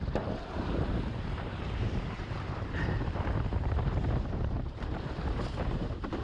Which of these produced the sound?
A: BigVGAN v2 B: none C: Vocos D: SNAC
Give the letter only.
A